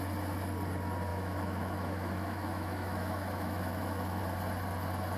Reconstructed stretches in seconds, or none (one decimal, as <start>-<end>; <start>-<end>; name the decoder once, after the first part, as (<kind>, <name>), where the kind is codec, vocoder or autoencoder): 1.1-4.2 (autoencoder, DAC-VAE)